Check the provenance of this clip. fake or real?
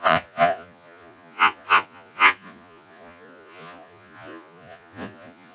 fake